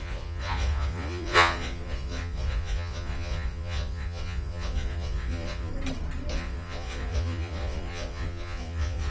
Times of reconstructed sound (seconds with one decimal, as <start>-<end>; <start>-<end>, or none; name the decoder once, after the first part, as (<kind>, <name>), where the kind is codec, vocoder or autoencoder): 0.0-5.7 (vocoder, Vocos); 6.3-9.1